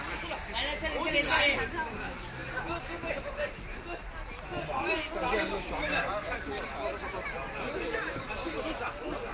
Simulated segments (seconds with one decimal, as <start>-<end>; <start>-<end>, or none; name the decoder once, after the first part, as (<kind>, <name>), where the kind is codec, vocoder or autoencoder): none